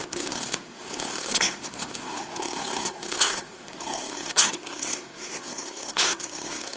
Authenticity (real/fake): fake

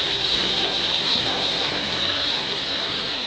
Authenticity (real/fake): fake